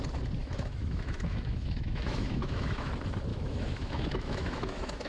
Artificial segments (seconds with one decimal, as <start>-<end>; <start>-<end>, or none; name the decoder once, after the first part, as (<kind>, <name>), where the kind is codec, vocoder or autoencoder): 0.4-2.9 (autoencoder, DAC-VAE); 3.3-5.1